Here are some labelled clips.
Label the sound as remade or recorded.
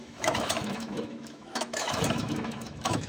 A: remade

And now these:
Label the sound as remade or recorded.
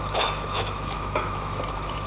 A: remade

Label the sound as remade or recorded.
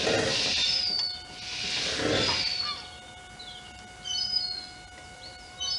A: recorded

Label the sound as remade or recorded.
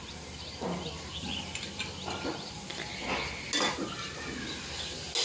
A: recorded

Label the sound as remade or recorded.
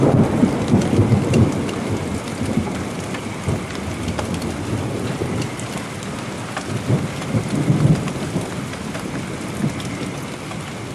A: recorded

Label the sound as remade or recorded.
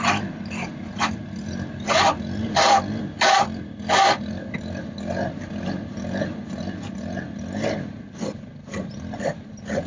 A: recorded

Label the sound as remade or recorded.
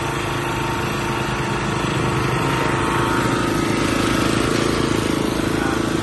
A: recorded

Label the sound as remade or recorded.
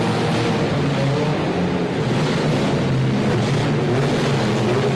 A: recorded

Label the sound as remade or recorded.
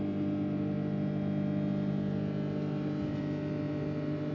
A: recorded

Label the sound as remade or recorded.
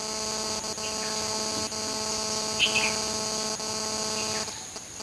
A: recorded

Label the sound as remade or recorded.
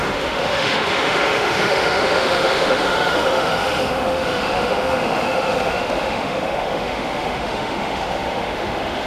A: remade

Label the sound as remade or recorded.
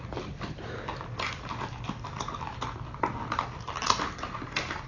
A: recorded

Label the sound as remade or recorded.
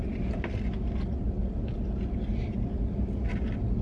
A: recorded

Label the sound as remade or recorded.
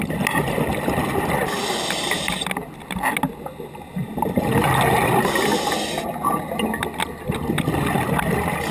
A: recorded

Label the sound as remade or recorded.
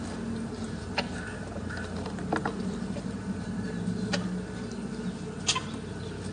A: recorded